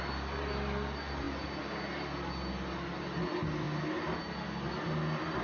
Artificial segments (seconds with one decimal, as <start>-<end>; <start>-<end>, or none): none